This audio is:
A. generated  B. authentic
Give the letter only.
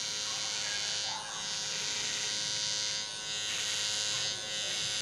B